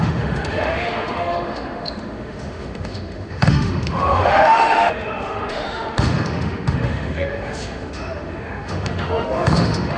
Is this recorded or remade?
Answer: remade